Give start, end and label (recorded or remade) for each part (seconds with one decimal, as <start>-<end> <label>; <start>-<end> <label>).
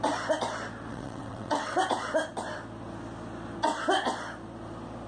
0.0-0.9 recorded; 0.9-1.8 remade; 1.8-5.1 recorded